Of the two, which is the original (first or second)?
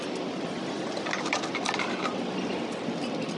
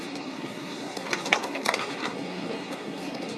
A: first